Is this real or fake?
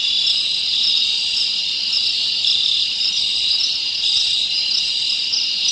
real